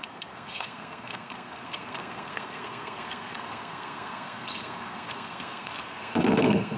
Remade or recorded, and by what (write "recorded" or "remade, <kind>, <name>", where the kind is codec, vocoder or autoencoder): remade, codec, SNAC